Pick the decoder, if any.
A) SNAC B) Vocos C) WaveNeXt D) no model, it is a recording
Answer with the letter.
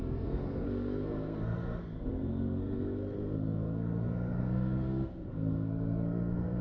A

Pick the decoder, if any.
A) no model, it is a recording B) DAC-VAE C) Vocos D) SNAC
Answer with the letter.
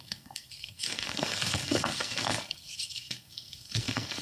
D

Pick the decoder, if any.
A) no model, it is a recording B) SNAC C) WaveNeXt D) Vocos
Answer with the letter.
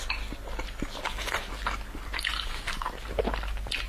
A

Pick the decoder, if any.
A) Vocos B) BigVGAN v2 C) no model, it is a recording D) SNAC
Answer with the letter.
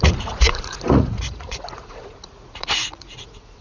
A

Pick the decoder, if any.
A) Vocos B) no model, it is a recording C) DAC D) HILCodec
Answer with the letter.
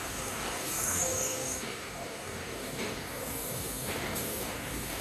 C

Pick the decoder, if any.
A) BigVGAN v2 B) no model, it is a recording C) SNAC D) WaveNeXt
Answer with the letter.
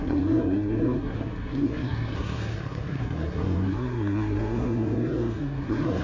C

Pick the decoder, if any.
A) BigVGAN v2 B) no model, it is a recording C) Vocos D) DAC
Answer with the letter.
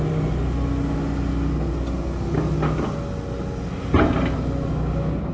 B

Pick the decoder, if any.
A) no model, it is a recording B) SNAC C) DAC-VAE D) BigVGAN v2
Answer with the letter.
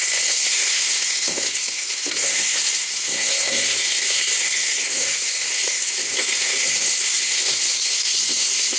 B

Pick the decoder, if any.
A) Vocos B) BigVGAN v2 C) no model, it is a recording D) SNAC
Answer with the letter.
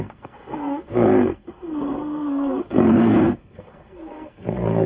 D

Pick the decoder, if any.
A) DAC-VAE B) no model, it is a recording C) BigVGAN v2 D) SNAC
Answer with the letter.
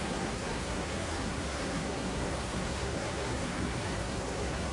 D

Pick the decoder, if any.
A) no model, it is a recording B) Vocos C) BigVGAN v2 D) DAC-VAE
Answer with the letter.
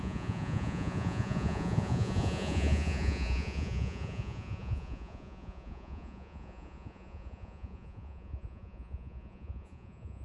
B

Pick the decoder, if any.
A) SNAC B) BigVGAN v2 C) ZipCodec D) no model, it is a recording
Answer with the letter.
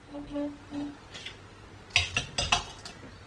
D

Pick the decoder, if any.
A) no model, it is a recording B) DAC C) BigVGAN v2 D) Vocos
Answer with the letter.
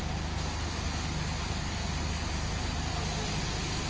A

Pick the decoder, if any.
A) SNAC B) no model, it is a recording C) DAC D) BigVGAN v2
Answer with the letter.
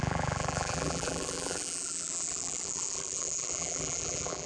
D